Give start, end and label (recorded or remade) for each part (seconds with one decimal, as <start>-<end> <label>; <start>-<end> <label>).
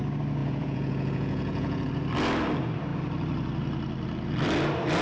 0.0-0.4 recorded; 0.4-1.9 remade; 1.9-5.0 recorded